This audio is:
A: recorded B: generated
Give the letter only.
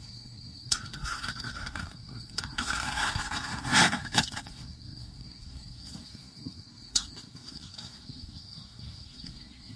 B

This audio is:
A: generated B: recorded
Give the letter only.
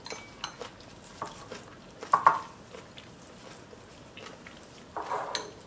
B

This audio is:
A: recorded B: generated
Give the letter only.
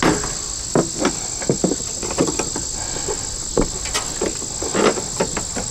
A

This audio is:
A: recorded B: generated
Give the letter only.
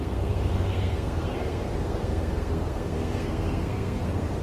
B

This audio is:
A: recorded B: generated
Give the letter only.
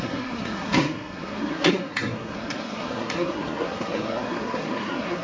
B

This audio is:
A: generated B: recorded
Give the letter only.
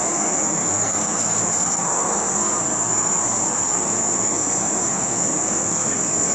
A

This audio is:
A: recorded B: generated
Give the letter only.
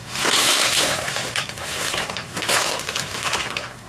B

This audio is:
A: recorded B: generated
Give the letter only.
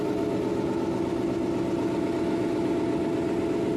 A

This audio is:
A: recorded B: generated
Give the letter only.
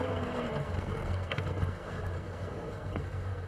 B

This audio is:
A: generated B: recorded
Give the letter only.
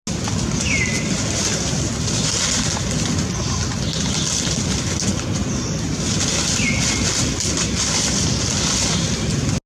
B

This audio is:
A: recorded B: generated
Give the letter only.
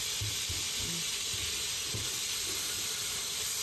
A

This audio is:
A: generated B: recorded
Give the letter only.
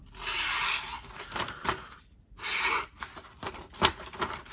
B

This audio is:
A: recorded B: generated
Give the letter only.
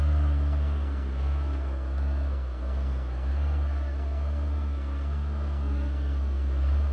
B